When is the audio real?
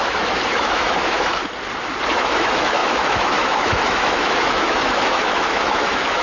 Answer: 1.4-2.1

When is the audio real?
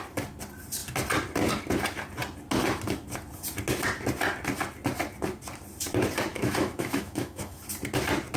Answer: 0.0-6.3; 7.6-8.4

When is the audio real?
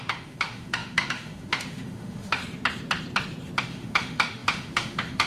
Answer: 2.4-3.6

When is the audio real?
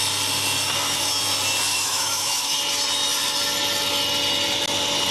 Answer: 0.0-1.7; 2.6-5.1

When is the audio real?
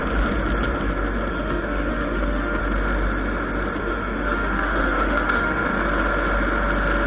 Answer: 0.0-1.3; 2.6-3.8; 5.7-7.1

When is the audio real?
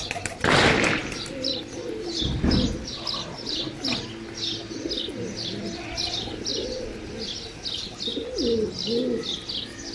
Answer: 0.0-9.9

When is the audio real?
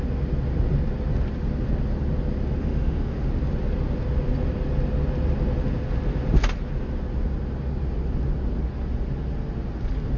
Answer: 0.0-2.6; 3.3-10.2